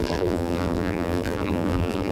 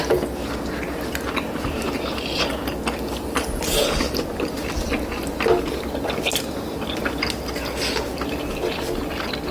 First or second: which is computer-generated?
first